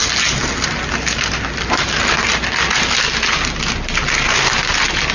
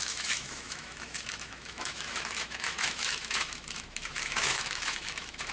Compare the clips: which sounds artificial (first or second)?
second